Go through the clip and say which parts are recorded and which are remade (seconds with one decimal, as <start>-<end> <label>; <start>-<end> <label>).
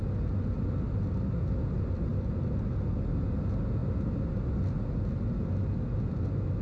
0.0-6.6 recorded